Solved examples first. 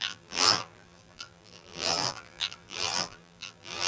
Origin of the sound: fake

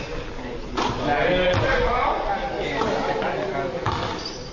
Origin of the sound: real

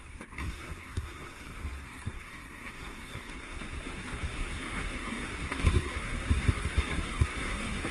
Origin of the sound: fake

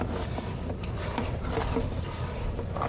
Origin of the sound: real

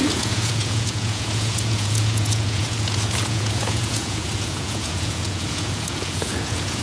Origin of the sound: fake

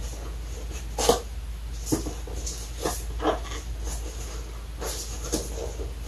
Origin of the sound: real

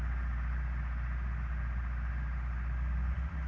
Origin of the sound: fake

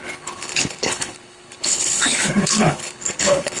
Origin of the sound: fake